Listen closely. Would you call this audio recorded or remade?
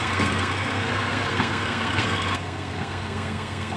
remade